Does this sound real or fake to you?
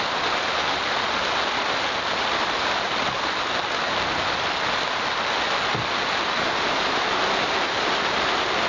real